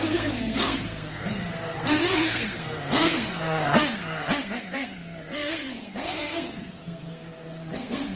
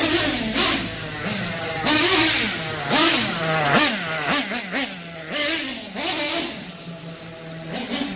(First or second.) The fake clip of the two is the first